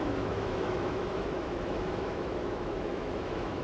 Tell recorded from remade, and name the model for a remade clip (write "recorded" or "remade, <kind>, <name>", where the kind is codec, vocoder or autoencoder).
remade, autoencoder, DAC-VAE